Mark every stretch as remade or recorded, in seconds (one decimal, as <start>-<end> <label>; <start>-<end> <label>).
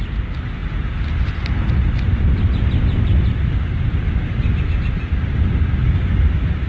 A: 0.0-6.7 recorded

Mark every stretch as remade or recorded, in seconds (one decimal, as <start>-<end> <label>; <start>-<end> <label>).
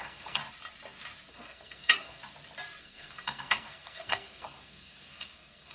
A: 0.0-0.4 remade; 0.4-1.3 recorded; 1.3-2.2 remade; 2.2-2.8 recorded; 2.8-5.7 remade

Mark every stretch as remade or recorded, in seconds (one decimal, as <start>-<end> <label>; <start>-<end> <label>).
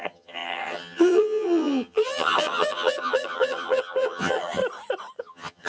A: 0.0-4.6 remade; 4.6-5.2 recorded; 5.2-5.7 remade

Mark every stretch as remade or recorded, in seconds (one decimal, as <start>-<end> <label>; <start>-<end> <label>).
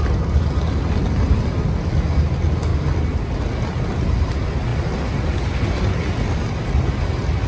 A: 0.0-7.5 recorded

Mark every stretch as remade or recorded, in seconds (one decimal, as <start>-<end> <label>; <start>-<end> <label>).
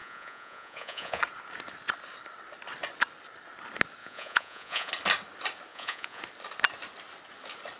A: 0.0-1.2 remade; 1.2-4.0 recorded; 4.0-4.9 remade; 4.9-5.7 recorded; 5.7-6.2 remade; 6.2-7.8 recorded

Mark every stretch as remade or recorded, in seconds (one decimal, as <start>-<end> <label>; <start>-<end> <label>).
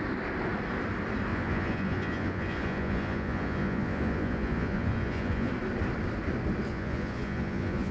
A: 0.0-1.3 recorded; 1.3-5.5 remade; 5.5-6.7 recorded; 6.7-7.9 remade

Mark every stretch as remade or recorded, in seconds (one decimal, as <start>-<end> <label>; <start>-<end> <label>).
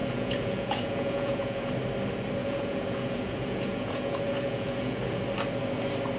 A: 0.0-1.7 remade; 1.7-2.4 recorded; 2.4-5.2 remade; 5.2-6.2 recorded